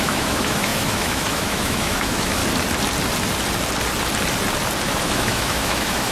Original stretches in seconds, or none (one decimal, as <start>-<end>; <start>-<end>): 2.4-5.0